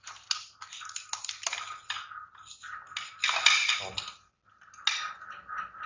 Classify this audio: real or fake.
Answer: real